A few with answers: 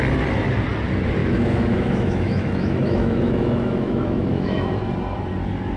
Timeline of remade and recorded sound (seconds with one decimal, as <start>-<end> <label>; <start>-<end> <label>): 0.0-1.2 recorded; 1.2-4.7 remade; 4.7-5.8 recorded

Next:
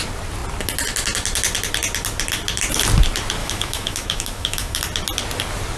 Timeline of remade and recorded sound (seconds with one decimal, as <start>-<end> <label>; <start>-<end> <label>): 0.0-3.4 recorded; 3.4-4.8 remade; 4.8-5.8 recorded

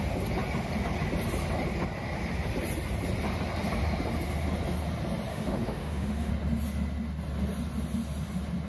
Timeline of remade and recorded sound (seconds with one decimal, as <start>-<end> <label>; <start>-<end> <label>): 0.0-5.3 recorded; 5.3-6.3 remade; 6.3-8.7 recorded